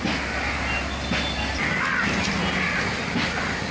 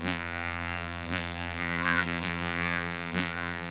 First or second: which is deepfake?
second